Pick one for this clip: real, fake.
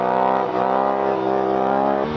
real